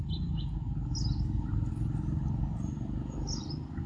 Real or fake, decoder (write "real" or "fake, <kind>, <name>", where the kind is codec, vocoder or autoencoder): real